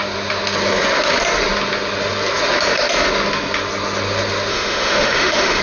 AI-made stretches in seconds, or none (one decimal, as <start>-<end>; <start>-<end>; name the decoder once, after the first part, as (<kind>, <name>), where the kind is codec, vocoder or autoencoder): 4.5-5.6 (autoencoder, DAC-VAE)